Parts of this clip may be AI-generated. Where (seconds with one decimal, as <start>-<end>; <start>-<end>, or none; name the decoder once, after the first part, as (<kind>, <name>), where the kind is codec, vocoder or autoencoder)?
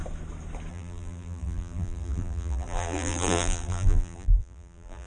0.7-5.1 (vocoder, BigVGAN v2)